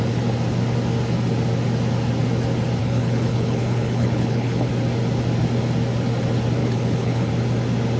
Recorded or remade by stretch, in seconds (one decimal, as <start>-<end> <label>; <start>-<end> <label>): 0.0-2.8 recorded; 2.8-4.7 remade; 4.7-6.6 recorded; 6.6-7.3 remade; 7.3-8.0 recorded